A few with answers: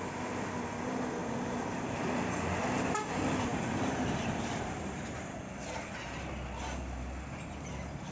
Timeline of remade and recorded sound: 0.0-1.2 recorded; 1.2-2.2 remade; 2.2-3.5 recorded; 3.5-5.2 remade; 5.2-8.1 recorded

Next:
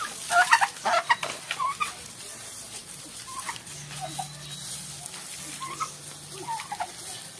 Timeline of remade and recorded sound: 0.0-7.4 recorded

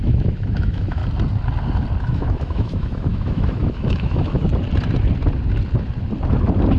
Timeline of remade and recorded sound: 0.0-1.0 remade; 1.0-2.0 recorded; 2.0-4.5 remade; 4.5-6.8 recorded

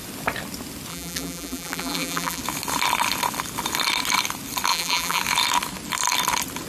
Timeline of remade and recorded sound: 0.0-0.9 recorded; 0.9-2.4 remade; 2.4-4.7 recorded; 4.7-5.2 remade; 5.2-6.7 recorded

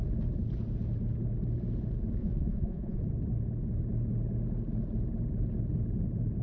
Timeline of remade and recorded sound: 0.0-2.2 recorded; 2.2-3.0 remade; 3.0-6.4 recorded